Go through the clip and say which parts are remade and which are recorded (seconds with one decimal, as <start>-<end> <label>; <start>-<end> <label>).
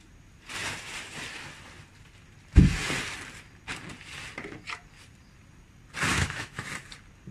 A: 0.0-6.1 recorded; 6.1-6.7 remade; 6.7-7.3 recorded